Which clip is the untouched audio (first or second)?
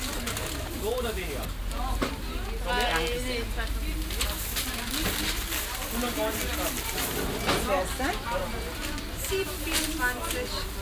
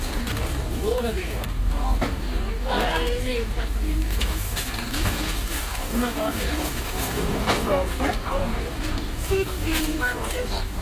first